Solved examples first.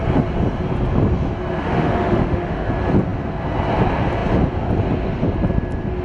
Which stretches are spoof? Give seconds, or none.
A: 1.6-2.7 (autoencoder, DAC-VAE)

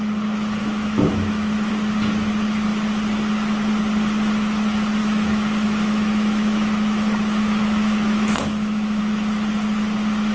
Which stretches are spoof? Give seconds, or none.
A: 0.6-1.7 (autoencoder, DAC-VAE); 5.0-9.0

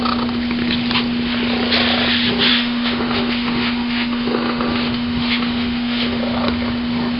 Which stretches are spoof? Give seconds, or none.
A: 2.5-6.2 (autoencoder, DAC-VAE)

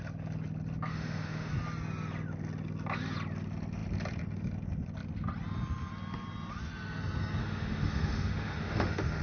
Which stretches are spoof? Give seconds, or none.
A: 0.9-1.5 (autoencoder, DAC-VAE); 7.4-9.2

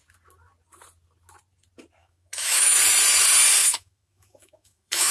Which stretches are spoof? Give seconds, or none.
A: 2.0-2.8 (autoencoder, DAC-VAE); 3.6-5.1

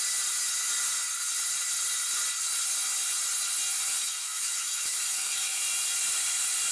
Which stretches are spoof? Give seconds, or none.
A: 4.0-5.6 (autoencoder, DAC-VAE)